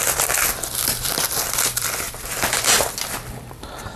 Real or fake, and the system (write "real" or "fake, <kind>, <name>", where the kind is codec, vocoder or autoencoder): fake, vocoder, BigVGAN v2